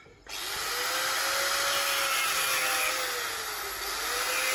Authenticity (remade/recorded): recorded